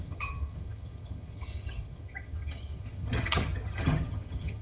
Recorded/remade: remade